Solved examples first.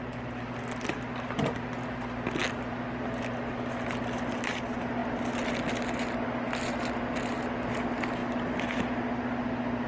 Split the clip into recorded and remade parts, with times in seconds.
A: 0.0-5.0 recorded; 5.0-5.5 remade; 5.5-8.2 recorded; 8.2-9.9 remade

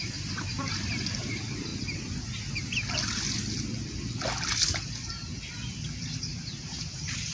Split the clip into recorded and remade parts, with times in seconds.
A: 0.0-1.7 remade; 1.7-6.0 recorded; 6.0-7.3 remade